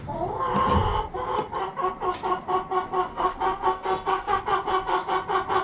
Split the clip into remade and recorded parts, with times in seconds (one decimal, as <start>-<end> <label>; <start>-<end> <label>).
0.0-3.1 recorded; 3.1-4.4 remade; 4.4-5.6 recorded